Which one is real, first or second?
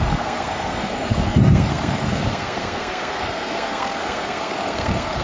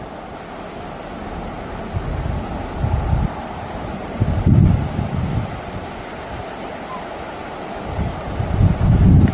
second